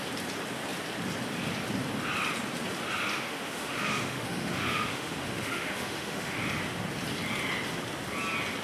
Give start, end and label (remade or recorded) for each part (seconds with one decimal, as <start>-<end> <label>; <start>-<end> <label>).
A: 0.0-3.1 recorded; 3.1-6.4 remade; 6.4-8.6 recorded